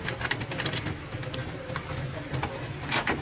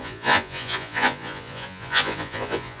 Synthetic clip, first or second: second